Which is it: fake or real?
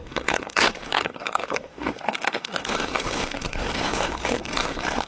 fake